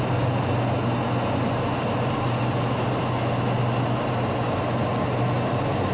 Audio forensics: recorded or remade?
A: recorded